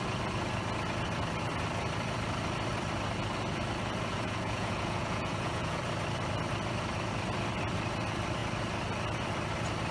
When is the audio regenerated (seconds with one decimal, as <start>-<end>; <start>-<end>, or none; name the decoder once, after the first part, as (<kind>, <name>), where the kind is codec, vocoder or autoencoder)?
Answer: 4.1-5.8 (vocoder, Vocos)